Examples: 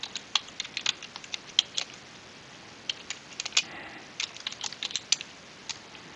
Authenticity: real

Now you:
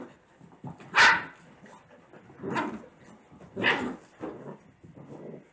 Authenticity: real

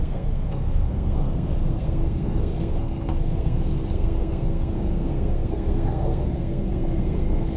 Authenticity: fake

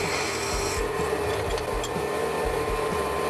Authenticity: real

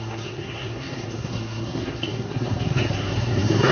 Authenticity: fake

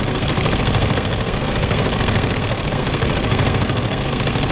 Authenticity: fake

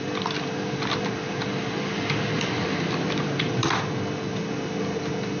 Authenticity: real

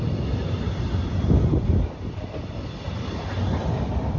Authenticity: real